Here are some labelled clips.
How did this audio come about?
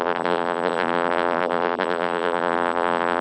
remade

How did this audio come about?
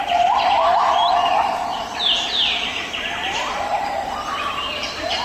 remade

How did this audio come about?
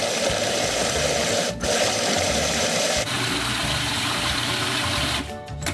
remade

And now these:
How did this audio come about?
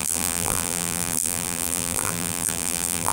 remade